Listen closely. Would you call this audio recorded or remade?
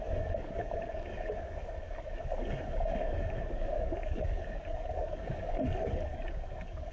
remade